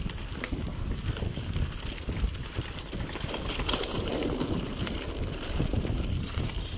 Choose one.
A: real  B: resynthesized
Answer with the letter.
B